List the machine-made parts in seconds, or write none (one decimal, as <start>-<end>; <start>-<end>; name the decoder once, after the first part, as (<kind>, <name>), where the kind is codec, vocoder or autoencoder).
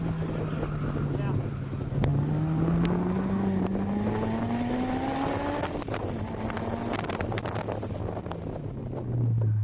none